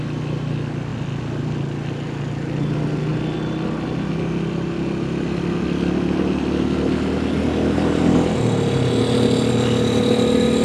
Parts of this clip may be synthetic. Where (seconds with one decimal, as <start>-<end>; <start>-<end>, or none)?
none